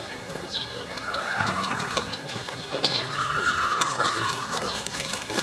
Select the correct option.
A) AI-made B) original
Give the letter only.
A